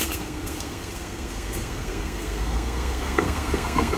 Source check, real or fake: fake